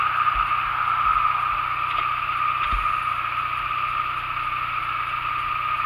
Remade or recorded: recorded